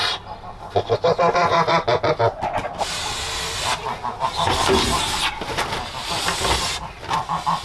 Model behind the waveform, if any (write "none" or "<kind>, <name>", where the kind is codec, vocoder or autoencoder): none